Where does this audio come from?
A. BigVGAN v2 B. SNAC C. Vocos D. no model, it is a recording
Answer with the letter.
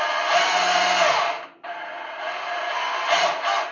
D